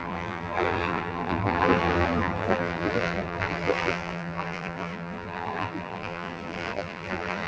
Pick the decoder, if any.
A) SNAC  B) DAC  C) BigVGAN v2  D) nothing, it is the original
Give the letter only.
C